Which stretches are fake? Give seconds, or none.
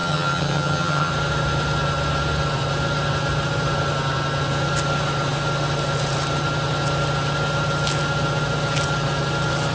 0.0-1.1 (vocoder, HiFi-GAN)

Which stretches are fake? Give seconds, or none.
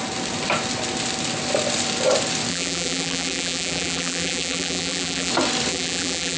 2.5-5.3 (vocoder, BigVGAN v2); 5.7-6.4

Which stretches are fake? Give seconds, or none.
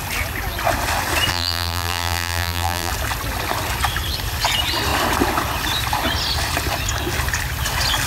1.3-2.9 (vocoder, BigVGAN v2)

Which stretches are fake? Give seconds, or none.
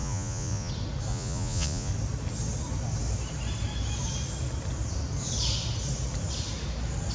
0.0-0.7 (vocoder, Vocos); 1.1-1.9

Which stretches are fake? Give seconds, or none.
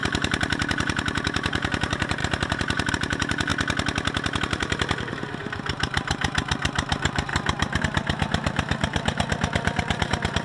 0.0-3.5 (vocoder, BigVGAN v2); 4.4-7.3; 7.8-10.4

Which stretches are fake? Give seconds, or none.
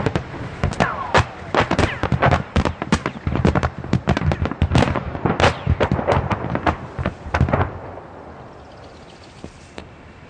none